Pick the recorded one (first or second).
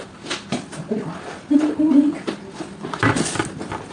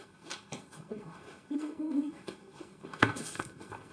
first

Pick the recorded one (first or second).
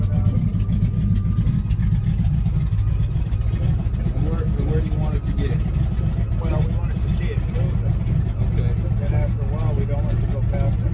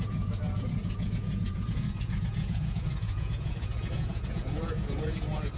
first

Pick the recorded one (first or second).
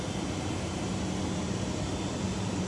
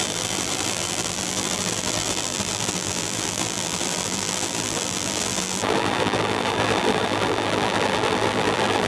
first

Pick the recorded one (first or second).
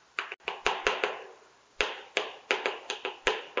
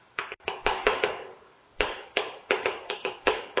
first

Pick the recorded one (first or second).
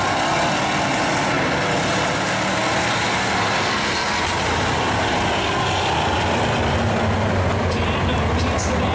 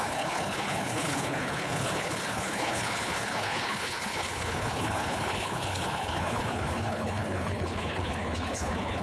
first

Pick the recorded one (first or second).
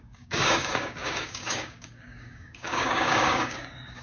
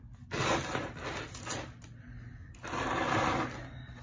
second